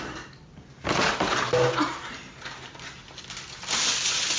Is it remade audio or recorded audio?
recorded